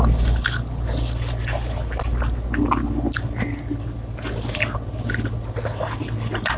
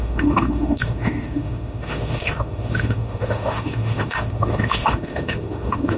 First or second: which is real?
first